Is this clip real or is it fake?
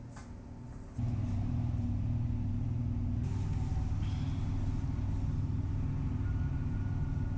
real